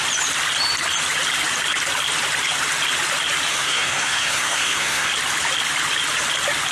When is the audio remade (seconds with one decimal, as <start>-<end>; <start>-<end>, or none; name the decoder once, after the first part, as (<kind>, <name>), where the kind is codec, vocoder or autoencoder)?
3.5-5.1 (codec, SNAC)